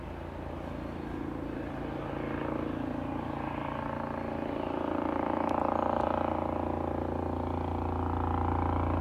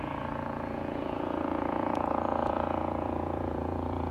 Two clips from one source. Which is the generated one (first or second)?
second